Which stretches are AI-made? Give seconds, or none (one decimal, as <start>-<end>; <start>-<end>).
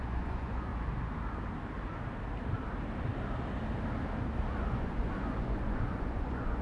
0.0-0.7; 4.7-6.6